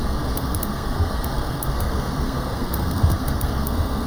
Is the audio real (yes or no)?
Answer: no